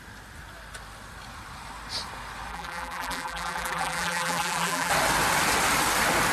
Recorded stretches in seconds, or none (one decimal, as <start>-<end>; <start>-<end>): 0.0-2.5; 4.9-6.3